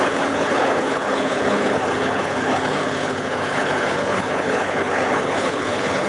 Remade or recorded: remade